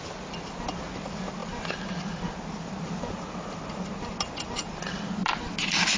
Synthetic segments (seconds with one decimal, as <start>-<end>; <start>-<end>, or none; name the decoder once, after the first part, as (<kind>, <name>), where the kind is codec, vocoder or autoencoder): none